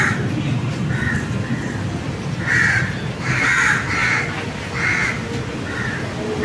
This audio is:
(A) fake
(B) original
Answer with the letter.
B